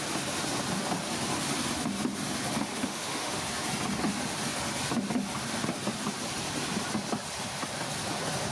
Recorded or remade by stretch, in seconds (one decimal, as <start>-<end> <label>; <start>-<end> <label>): 0.0-2.7 recorded; 2.7-3.4 remade; 3.4-8.5 recorded

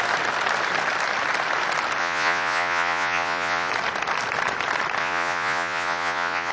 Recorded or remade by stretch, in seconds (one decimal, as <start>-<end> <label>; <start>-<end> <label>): 0.0-2.0 recorded; 2.0-3.7 remade; 3.7-5.0 recorded; 5.0-6.5 remade

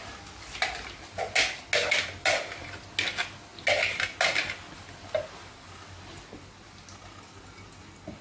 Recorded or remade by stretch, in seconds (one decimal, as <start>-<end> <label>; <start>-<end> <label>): 0.0-8.2 recorded

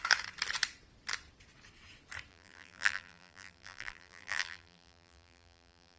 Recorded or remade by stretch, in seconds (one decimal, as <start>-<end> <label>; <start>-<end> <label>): 0.0-2.3 recorded; 2.3-6.0 remade

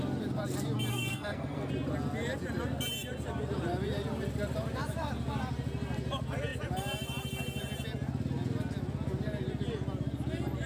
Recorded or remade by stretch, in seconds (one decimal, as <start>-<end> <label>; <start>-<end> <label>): 0.0-0.9 recorded; 0.9-1.7 remade; 1.7-10.7 recorded

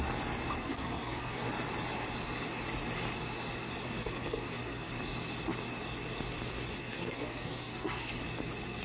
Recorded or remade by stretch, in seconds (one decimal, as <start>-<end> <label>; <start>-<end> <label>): 0.0-0.6 recorded; 0.6-1.5 remade; 1.5-4.0 recorded; 4.0-4.9 remade; 4.9-6.8 recorded; 6.8-8.1 remade; 8.1-8.8 recorded